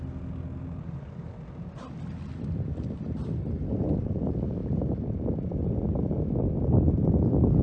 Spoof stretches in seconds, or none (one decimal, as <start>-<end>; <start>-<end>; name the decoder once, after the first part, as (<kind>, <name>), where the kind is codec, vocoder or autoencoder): none